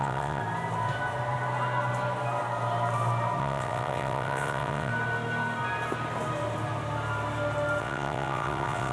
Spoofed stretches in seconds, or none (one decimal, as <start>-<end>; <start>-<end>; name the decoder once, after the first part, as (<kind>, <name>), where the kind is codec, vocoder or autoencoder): 0.0-0.4 (vocoder, WaveNeXt); 3.4-4.9; 7.8-8.9